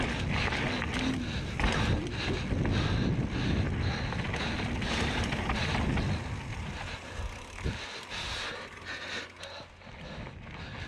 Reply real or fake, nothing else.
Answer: real